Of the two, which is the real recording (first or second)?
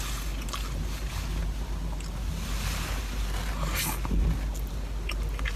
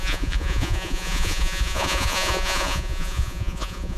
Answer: first